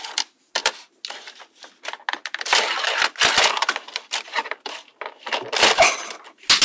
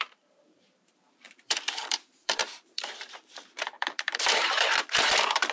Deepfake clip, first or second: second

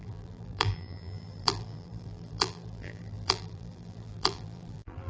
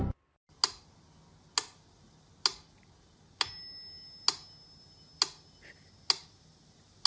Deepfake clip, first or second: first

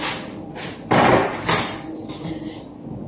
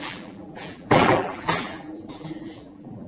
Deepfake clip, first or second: second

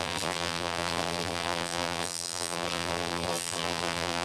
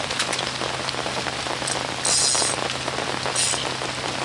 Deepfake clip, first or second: first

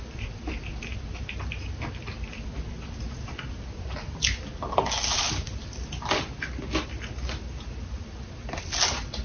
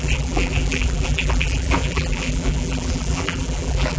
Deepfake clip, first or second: second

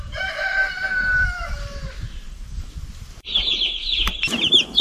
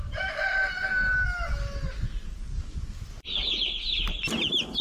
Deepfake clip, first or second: first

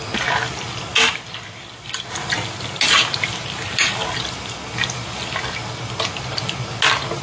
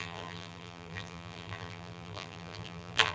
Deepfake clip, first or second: second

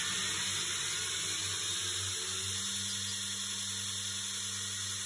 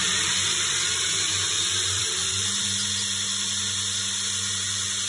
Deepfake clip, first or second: second